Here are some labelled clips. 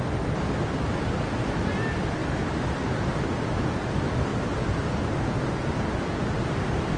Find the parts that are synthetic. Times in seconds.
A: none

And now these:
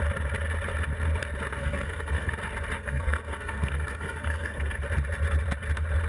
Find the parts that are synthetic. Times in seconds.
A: 1.6-2.3 (codec, SNAC); 2.8-4.7

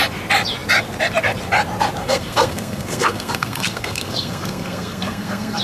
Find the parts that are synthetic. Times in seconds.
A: 2.0-5.6 (codec, SNAC)

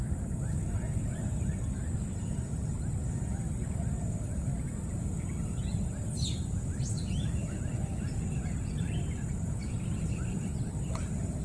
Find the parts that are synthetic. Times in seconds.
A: none

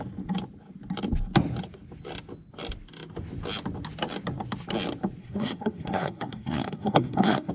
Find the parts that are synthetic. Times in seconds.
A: 5.2-7.5 (codec, SNAC)

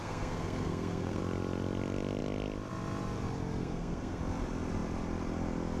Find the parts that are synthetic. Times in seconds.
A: 0.0-1.2 (codec, SNAC); 3.6-4.2

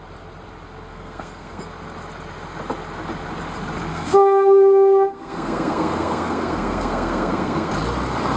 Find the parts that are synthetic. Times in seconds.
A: 0.9-1.6 (codec, SNAC); 3.9-7.7